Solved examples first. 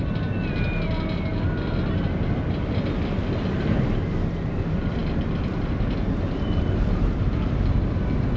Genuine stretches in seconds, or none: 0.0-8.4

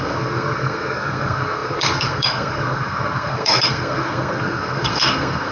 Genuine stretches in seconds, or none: none